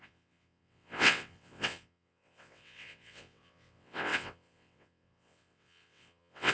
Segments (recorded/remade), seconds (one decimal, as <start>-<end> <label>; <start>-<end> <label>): 0.0-6.5 remade